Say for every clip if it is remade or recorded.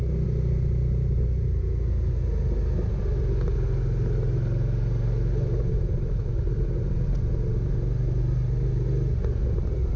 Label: recorded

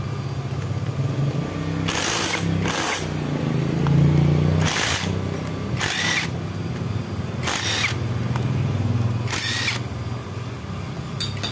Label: recorded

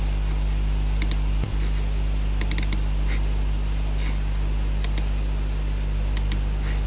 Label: recorded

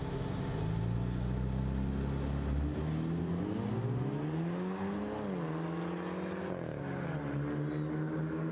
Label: recorded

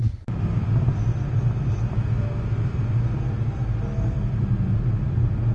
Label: recorded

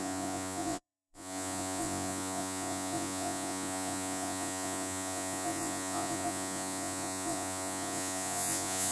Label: remade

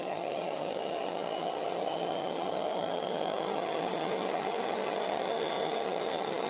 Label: remade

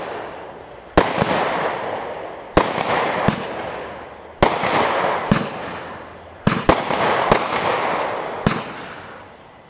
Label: recorded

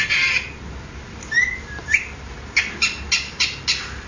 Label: recorded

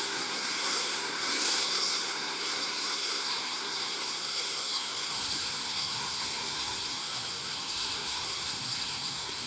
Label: remade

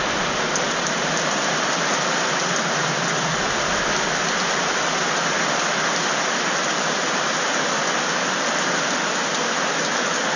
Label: recorded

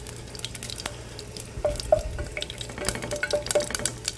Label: recorded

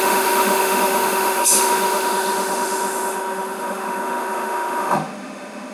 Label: remade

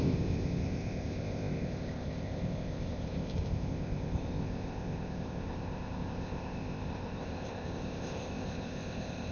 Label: remade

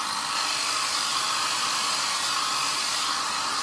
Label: recorded